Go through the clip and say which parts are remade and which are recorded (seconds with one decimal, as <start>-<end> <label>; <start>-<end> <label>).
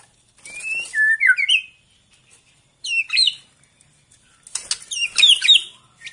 0.0-6.1 recorded